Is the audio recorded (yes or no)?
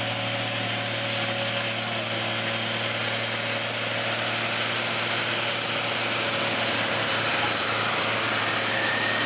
yes